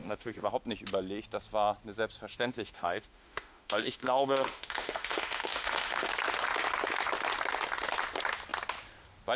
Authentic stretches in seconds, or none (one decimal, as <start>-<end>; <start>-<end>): 0.5-2.3; 6.1-9.4